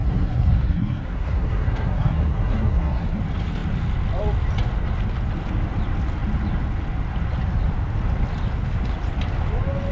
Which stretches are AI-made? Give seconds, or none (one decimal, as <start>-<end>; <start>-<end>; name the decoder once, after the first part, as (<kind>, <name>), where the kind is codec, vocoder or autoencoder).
0.0-3.2 (codec, SNAC)